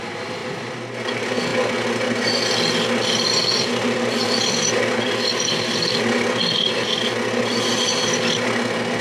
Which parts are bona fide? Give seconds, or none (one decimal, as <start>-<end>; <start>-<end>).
0.0-3.8; 5.8-9.0